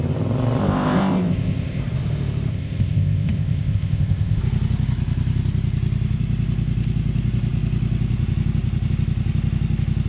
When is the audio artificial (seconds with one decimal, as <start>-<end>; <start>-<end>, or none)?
0.6-1.8; 2.5-4.4